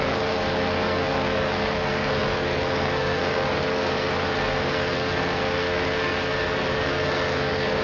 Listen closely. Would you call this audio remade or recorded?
remade